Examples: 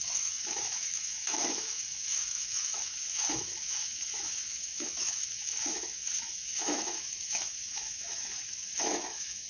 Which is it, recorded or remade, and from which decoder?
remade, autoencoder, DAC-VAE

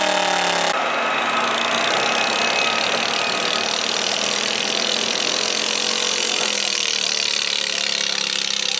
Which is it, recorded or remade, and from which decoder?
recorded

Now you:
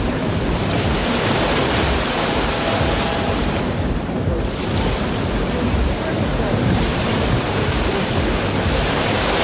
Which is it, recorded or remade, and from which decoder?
remade, vocoder, BigVGAN v2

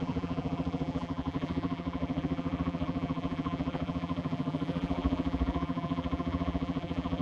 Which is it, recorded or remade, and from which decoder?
remade, vocoder, BigVGAN v2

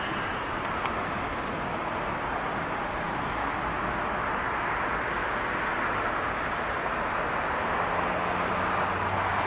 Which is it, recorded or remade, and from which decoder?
recorded